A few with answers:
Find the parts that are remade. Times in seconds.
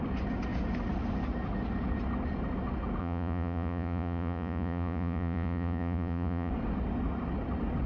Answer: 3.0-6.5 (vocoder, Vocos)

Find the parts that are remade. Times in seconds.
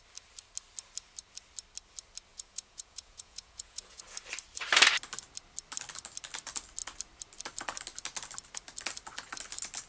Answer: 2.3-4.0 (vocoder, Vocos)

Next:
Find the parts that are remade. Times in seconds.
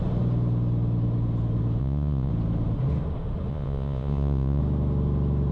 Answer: 1.8-2.3 (vocoder, Vocos); 3.5-4.6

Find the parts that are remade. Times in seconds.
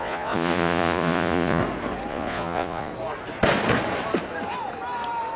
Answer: 0.0-1.6 (vocoder, Vocos); 2.1-2.9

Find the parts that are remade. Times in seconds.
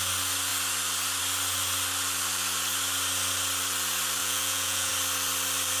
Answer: 4.2-4.9 (vocoder, Vocos)